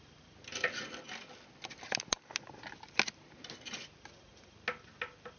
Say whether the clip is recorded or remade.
recorded